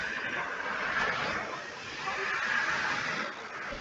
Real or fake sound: real